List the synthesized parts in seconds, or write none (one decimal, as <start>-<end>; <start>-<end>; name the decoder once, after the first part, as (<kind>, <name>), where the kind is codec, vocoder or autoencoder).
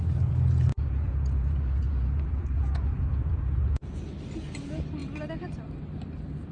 0.7-4.0 (vocoder, Vocos)